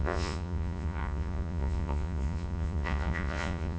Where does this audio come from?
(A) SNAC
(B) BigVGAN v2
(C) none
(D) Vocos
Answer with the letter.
D